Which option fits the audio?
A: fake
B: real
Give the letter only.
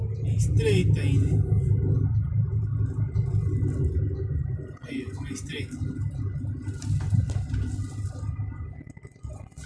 B